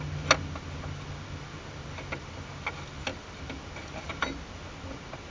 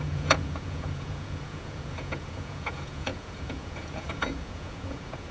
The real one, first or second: first